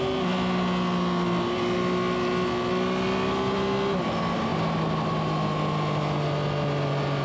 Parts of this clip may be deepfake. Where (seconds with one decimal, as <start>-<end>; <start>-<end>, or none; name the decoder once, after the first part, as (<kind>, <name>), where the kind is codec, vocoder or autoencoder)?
none